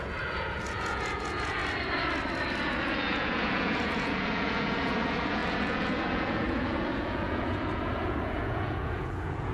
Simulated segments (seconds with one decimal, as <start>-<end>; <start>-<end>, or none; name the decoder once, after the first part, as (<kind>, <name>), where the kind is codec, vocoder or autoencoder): 0.0-1.6 (vocoder, Vocos); 2.6-9.5